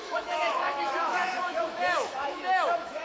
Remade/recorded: remade